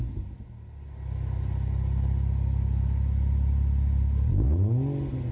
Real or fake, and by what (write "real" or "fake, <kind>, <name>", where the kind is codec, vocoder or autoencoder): real